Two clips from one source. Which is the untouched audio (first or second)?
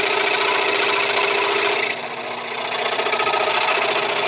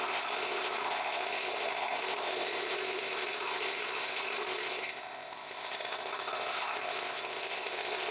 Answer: first